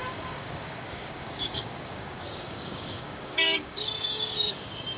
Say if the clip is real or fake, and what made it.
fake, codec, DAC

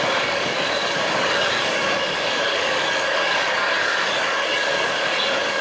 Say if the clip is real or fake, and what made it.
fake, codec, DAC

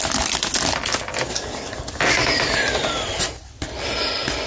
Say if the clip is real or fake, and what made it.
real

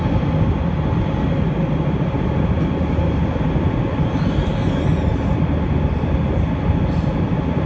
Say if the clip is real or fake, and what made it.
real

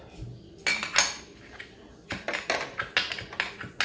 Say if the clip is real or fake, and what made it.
real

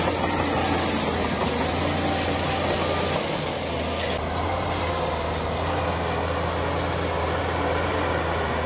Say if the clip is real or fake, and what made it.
real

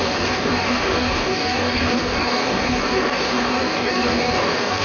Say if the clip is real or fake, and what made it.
fake, codec, DAC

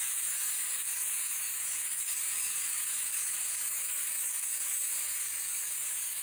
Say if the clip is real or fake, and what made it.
fake, codec, DAC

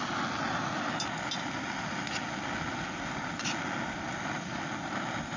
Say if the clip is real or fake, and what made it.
real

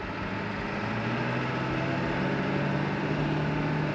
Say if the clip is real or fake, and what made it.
real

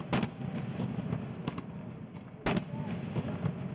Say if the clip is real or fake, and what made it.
real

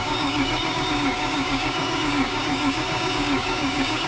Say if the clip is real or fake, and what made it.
fake, codec, DAC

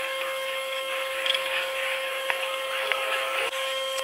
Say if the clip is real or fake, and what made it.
fake, codec, DAC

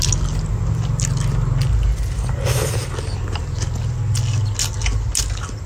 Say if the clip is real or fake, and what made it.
real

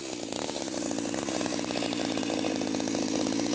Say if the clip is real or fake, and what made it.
real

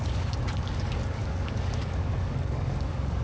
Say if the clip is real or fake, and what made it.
fake, codec, DAC